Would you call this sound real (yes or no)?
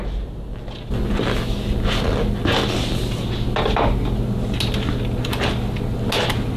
yes